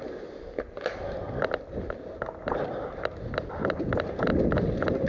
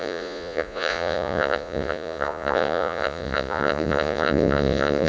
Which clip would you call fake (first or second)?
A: second